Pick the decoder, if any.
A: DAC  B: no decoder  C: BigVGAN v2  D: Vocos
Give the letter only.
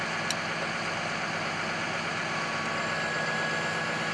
B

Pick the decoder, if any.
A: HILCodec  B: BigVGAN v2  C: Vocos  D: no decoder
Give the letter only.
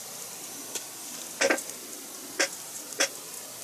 D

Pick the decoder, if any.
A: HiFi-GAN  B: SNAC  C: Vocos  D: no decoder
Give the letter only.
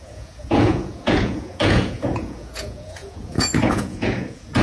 C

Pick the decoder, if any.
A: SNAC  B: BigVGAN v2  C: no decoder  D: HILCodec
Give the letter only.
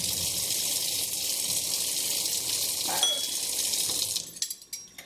C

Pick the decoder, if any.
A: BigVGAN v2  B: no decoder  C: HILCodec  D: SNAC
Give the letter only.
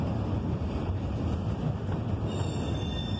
B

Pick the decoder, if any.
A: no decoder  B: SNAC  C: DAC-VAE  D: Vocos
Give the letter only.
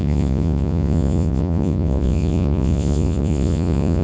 D